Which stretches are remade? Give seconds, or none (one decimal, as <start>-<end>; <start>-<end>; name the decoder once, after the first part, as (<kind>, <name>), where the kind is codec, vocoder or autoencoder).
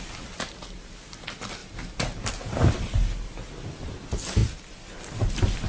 none